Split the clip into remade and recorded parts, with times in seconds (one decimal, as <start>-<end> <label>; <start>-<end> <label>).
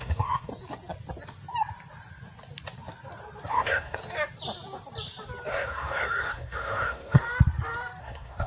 0.0-0.5 remade; 0.5-3.5 recorded; 3.5-4.0 remade; 4.0-5.5 recorded; 5.5-7.2 remade; 7.2-8.0 recorded; 8.0-8.5 remade